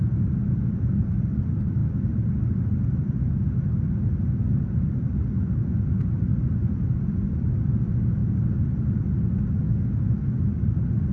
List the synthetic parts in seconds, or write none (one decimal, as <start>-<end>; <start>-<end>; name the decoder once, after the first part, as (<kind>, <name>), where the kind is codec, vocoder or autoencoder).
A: none